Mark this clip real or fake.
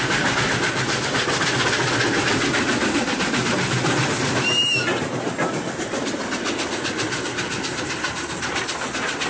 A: real